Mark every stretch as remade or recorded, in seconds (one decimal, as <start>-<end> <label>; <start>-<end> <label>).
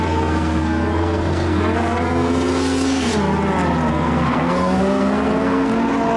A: 0.0-3.1 remade; 3.1-3.9 recorded; 3.9-5.7 remade; 5.7-6.2 recorded